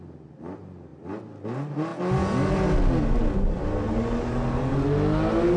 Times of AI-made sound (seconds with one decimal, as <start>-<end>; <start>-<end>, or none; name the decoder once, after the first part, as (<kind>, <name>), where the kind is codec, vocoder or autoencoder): none